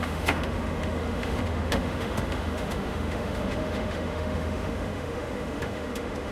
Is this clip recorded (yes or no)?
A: no